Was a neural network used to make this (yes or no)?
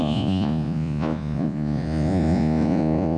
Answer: yes